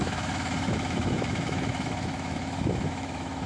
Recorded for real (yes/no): no